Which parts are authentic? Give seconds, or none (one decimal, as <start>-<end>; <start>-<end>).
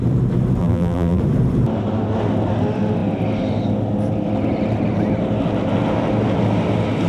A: 0.0-0.6; 1.2-7.1